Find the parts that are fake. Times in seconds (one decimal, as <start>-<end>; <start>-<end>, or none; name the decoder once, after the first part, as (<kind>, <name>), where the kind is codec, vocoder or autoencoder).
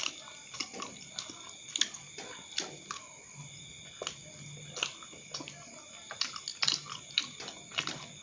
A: none